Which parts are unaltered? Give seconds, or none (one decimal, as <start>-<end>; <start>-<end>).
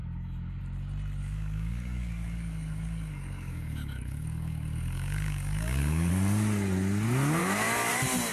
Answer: 0.6-1.2; 6.1-7.4; 7.9-8.3